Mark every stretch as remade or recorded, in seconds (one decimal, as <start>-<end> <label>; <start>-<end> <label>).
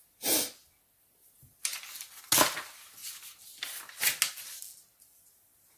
0.0-5.8 recorded